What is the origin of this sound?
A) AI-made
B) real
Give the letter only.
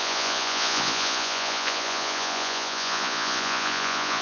A